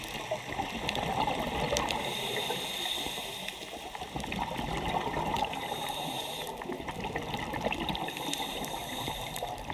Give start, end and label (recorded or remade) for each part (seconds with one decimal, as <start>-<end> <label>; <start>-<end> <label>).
0.0-5.3 recorded; 5.3-6.9 remade; 6.9-9.7 recorded